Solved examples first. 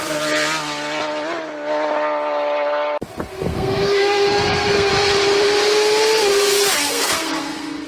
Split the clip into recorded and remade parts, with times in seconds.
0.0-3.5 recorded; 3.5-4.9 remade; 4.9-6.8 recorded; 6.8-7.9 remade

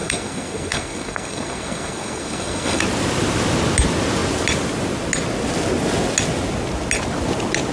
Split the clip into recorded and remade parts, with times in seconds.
0.0-2.8 remade; 2.8-7.7 recorded